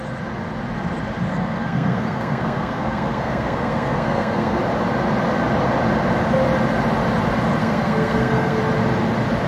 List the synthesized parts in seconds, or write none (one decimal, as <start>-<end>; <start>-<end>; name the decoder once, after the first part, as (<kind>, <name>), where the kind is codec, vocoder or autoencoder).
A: 1.3-4.6 (codec, SNAC); 7.6-8.6